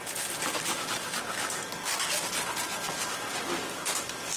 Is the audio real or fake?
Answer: real